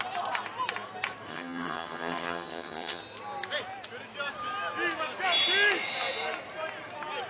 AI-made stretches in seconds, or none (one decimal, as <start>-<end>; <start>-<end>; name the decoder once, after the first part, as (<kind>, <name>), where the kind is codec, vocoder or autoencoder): 1.3-3.0 (vocoder, HiFi-GAN)